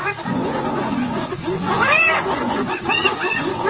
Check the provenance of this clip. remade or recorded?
remade